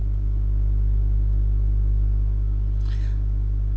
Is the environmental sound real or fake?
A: fake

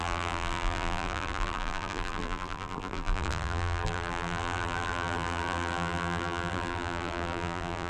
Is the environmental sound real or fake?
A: fake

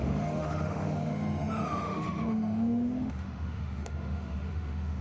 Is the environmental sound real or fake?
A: fake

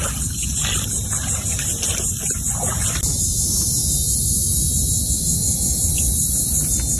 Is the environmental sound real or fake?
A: real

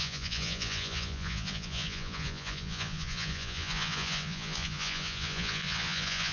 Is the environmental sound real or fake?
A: fake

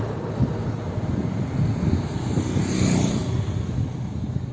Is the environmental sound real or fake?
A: real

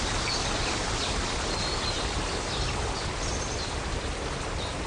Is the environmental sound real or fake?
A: real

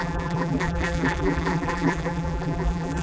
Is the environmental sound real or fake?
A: fake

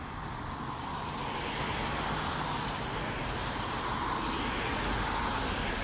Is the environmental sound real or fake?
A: real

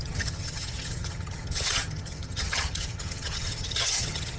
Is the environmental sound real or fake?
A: fake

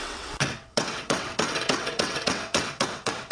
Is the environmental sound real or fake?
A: fake